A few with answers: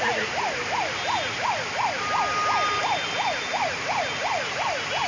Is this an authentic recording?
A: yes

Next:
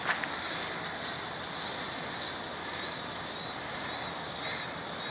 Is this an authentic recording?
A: yes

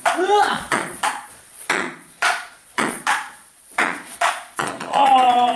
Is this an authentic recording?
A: no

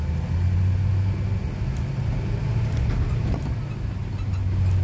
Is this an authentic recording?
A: yes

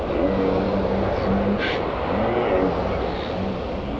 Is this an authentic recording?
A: yes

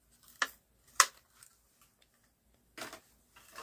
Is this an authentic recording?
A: yes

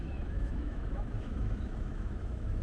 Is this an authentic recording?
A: no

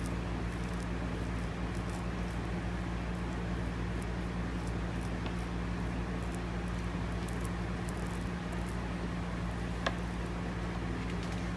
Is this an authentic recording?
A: yes